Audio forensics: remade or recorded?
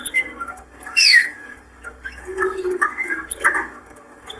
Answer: remade